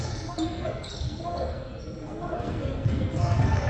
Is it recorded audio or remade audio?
remade